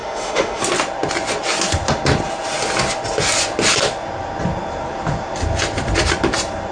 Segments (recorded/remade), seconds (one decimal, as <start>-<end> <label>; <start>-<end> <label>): 0.0-0.6 remade; 0.6-6.7 recorded